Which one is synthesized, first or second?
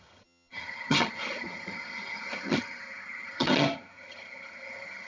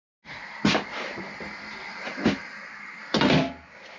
first